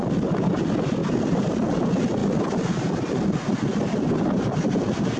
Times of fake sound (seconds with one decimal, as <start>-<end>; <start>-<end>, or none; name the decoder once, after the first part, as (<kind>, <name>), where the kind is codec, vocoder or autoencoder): none

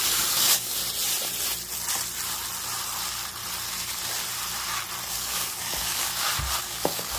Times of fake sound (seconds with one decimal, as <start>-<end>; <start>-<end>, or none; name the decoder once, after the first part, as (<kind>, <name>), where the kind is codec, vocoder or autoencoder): 0.0-0.8 (codec, DAC); 5.1-6.1; 6.6-7.2

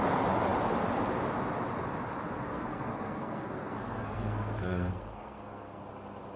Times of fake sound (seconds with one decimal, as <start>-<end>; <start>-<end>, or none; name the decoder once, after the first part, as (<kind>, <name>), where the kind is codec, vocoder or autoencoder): 2.5-5.8 (codec, SNAC)

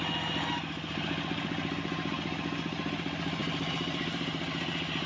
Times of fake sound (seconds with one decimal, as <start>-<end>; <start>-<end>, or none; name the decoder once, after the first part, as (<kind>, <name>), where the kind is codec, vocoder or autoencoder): 3.4-5.1 (vocoder, BigVGAN v2)

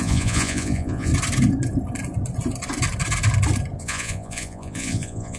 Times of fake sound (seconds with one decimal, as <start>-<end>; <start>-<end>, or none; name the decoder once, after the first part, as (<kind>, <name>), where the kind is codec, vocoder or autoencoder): 0.0-1.1 (vocoder, Vocos); 3.8-5.4

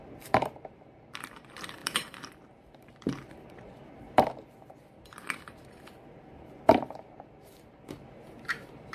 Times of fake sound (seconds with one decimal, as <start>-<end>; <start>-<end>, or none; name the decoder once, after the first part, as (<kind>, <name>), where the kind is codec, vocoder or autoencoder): 0.0-8.9 (vocoder, BigVGAN v2)